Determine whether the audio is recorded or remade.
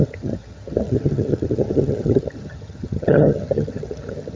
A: remade